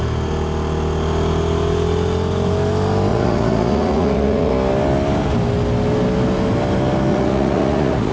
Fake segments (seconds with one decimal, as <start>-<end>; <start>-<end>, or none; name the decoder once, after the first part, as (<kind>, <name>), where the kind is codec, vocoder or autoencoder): 3.1-4.5 (vocoder, Vocos); 7.1-8.1